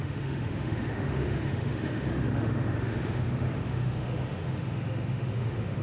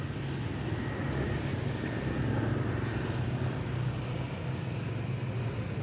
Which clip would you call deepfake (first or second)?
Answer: first